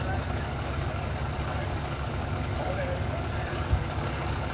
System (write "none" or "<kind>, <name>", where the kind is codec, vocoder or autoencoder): codec, DAC